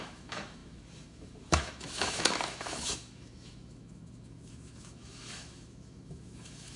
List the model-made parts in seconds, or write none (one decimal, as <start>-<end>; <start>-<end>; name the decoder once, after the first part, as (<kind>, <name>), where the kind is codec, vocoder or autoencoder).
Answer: 0.0-6.8 (autoencoder, DAC-VAE)